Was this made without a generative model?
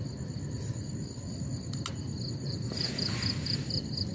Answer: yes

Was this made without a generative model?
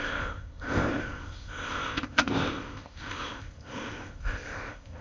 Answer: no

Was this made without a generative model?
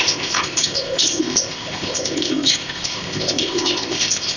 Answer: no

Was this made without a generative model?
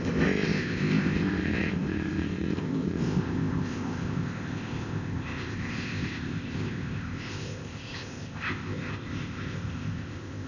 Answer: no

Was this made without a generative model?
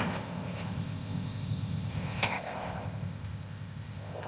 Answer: no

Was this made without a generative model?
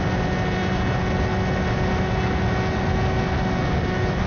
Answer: yes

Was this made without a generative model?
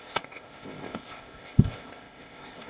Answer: no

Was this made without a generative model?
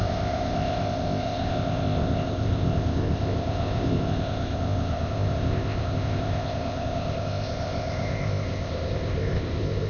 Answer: no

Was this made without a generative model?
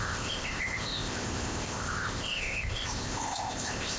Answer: no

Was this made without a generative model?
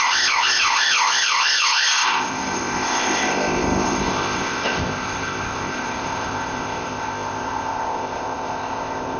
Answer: no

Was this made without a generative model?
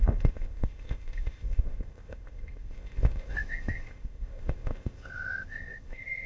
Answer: no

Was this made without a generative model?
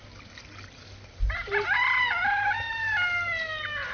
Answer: yes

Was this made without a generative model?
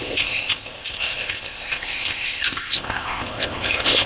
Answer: no